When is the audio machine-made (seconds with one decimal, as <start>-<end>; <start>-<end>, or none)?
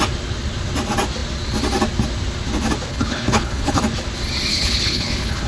2.9-3.8; 4.5-5.5